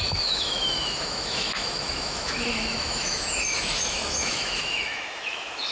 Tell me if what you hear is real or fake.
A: fake